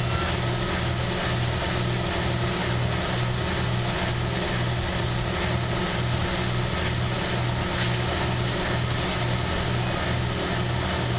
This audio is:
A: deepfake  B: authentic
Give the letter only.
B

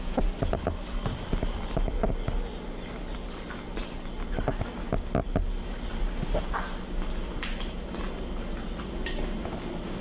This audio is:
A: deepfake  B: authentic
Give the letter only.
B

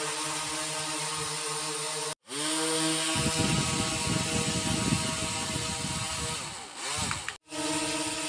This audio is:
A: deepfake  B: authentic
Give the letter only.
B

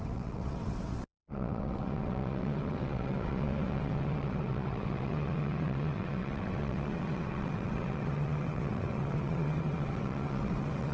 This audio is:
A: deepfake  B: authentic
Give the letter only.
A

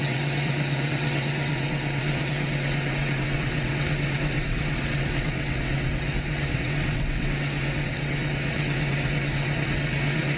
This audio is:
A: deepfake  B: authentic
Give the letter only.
A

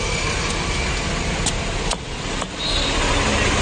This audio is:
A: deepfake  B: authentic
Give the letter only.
B